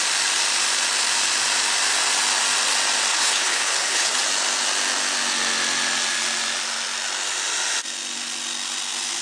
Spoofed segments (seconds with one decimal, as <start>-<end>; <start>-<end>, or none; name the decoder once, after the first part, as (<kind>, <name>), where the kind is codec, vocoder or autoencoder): 3.1-4.2 (codec, HILCodec)